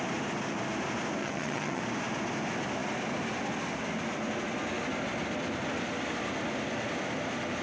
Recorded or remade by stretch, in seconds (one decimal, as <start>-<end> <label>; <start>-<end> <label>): 0.0-1.2 recorded; 1.2-1.8 remade; 1.8-7.6 recorded